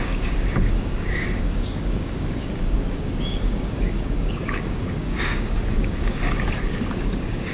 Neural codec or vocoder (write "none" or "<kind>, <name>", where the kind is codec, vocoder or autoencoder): codec, DAC